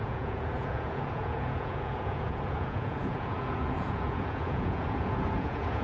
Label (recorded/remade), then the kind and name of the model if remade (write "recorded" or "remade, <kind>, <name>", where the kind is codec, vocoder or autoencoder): remade, vocoder, Vocos